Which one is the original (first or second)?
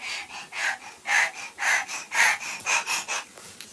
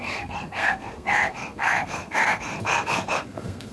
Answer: first